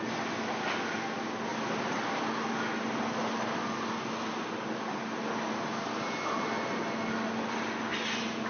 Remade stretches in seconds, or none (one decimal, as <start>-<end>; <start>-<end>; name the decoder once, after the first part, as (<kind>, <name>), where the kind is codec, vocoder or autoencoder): none